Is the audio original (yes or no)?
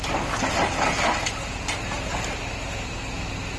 yes